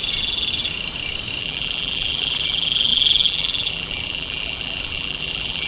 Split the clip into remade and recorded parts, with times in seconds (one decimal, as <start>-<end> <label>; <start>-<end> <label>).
0.0-1.4 recorded; 1.4-5.7 remade